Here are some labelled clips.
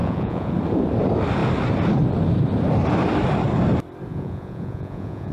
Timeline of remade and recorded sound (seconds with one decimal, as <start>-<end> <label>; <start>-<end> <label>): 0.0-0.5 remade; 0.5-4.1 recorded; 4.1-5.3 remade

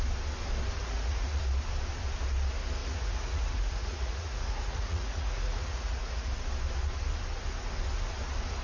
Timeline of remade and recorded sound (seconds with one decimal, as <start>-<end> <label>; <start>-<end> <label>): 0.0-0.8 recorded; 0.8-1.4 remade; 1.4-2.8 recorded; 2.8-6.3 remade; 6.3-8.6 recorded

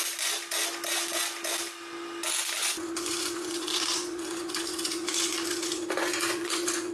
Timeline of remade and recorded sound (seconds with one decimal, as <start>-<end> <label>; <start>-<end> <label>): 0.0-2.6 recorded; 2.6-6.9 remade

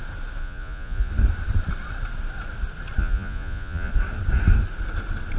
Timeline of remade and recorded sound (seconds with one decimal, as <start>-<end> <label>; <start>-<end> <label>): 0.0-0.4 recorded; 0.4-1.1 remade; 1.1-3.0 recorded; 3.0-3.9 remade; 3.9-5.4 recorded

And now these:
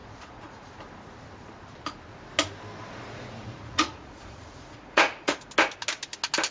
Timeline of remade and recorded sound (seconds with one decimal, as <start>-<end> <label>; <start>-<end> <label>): 0.0-0.7 remade; 0.7-2.8 recorded; 2.8-5.5 remade; 5.5-6.5 recorded

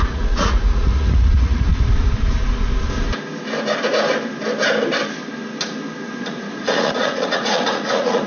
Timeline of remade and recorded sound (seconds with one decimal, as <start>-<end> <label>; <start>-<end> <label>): 0.0-1.7 remade; 1.7-6.2 recorded; 6.2-8.3 remade

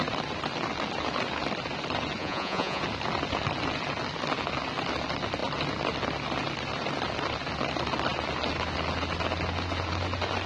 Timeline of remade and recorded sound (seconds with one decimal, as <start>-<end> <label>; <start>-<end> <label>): 0.0-2.2 recorded; 2.2-2.8 remade; 2.8-10.5 recorded

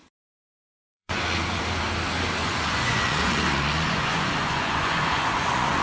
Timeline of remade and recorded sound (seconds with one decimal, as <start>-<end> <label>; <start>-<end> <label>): 0.0-1.6 remade; 1.6-2.4 recorded; 2.4-5.8 remade